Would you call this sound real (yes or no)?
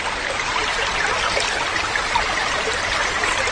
yes